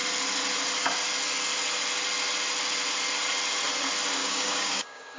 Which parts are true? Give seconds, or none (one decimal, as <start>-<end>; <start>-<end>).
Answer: 0.0-4.2